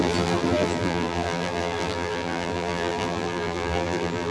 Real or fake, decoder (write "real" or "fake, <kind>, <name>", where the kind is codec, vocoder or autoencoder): fake, vocoder, BigVGAN v2